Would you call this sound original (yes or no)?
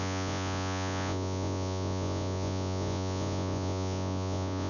no